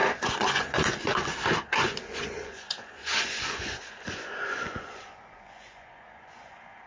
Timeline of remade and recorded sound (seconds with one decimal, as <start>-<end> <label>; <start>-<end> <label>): 0.0-1.3 remade; 1.3-1.8 recorded; 1.8-6.9 remade